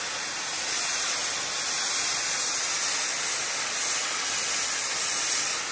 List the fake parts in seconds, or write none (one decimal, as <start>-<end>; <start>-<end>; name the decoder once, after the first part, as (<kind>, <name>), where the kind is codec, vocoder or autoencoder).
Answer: none